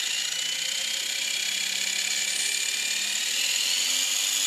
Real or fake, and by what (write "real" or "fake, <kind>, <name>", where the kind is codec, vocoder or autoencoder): real